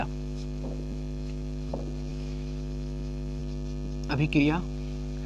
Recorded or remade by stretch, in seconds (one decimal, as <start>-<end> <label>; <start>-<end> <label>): 0.0-1.7 remade; 1.7-2.1 recorded; 2.1-3.4 remade; 3.4-5.3 recorded